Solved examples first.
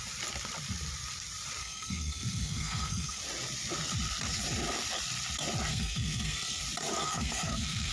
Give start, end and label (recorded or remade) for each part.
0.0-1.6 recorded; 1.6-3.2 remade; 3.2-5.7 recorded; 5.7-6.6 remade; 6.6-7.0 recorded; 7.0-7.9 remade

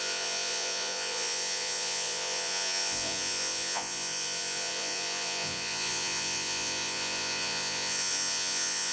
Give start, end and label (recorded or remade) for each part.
0.0-8.9 remade

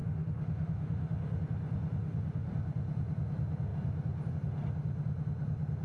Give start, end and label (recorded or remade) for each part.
0.0-1.4 remade; 1.4-2.0 recorded; 2.0-2.5 remade; 2.5-5.8 recorded

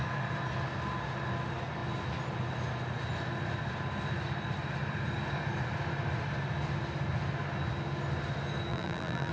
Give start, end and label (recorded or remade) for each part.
0.0-8.7 recorded; 8.7-9.3 remade

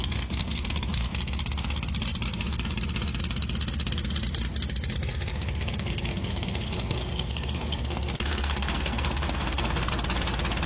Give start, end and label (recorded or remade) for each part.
0.0-1.1 remade; 1.1-5.3 recorded; 5.3-9.9 remade; 9.9-10.7 recorded

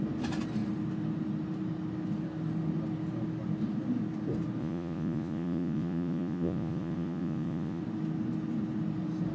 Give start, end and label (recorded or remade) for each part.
0.0-4.6 recorded; 4.6-7.8 remade; 7.8-9.3 recorded

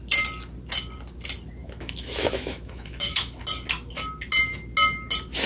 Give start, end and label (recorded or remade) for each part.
0.0-1.6 recorded; 1.6-3.4 remade; 3.4-5.5 recorded